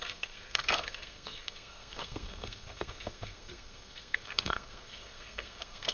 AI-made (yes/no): yes